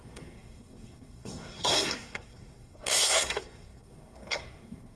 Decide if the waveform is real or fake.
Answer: fake